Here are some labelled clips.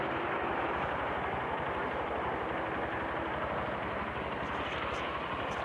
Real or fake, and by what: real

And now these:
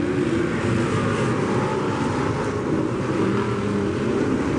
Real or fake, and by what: real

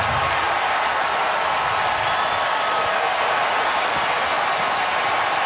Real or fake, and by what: real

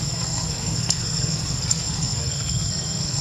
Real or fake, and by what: fake, codec, SNAC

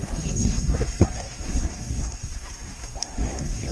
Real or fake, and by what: fake, codec, SNAC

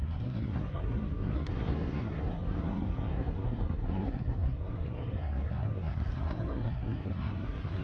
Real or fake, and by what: fake, codec, SNAC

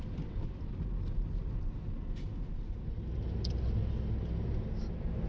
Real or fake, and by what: real